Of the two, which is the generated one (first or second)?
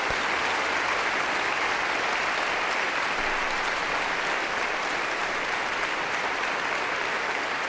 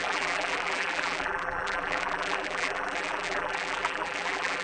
second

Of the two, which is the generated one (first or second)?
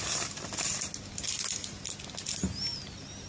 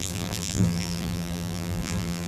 second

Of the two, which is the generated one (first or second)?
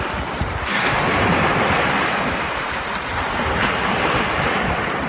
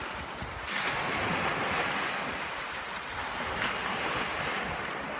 first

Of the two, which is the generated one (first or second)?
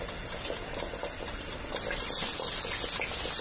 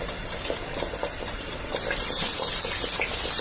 second